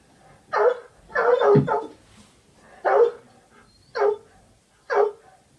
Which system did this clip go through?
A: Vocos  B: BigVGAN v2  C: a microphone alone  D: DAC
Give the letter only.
C